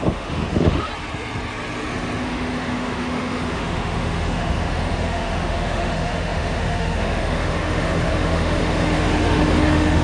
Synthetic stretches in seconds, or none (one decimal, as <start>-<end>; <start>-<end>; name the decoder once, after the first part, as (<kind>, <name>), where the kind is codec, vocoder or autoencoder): 0.0-0.9 (autoencoder, DAC-VAE); 2.2-10.0